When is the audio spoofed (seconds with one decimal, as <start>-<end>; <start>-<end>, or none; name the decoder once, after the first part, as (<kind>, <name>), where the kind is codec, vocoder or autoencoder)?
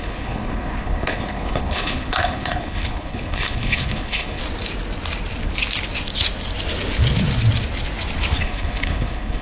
0.0-4.4 (codec, HILCodec); 8.3-9.4